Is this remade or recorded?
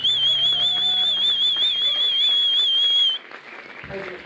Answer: recorded